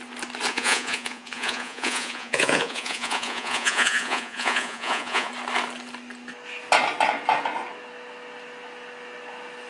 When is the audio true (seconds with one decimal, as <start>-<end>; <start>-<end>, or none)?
0.0-0.5; 5.3-9.7

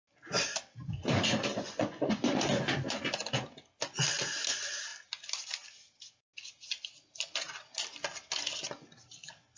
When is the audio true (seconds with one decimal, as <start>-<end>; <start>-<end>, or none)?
0.0-1.5; 2.6-9.6

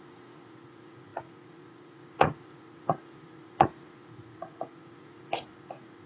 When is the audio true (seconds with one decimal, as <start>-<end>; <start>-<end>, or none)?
none

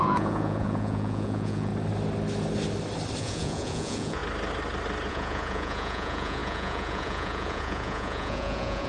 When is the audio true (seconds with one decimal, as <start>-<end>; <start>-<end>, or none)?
1.7-3.2; 4.2-5.1